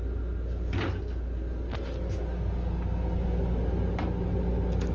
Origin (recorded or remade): recorded